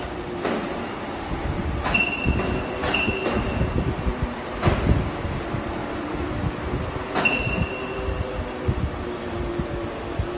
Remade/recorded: remade